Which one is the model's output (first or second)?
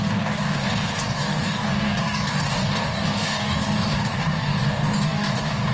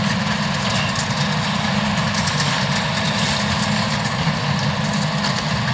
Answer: first